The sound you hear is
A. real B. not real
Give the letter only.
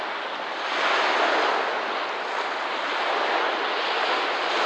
A